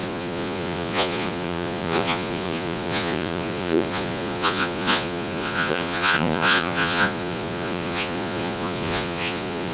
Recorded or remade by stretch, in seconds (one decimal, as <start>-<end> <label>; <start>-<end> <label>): 0.0-9.7 remade